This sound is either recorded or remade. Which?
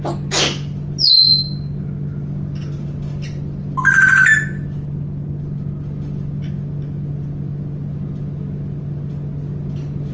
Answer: recorded